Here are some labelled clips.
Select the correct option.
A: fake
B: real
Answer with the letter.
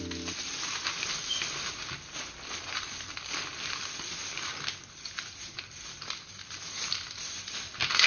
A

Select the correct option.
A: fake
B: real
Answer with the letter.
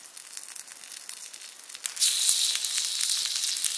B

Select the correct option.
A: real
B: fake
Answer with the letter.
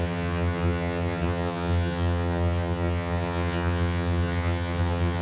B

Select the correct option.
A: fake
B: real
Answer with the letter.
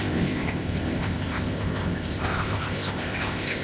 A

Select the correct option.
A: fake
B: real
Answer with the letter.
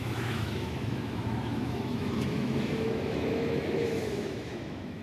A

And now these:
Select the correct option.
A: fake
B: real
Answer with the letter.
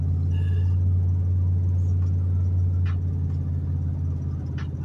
B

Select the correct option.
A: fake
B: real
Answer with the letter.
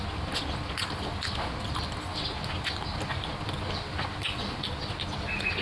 B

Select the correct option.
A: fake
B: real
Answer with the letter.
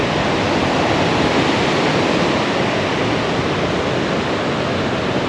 B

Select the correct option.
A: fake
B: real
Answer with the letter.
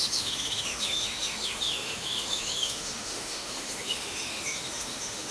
A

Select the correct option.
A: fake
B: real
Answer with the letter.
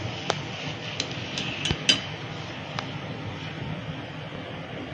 B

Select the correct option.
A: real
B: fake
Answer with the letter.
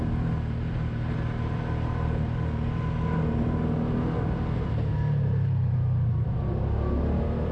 A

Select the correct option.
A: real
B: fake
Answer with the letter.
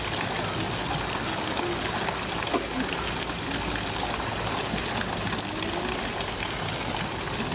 A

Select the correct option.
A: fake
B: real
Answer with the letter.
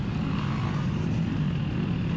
B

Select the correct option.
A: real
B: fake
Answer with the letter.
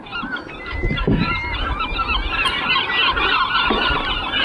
A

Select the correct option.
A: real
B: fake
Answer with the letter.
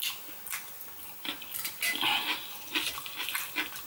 A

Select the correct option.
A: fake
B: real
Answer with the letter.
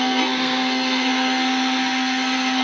A